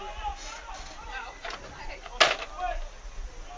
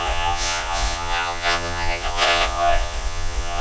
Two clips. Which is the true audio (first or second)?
first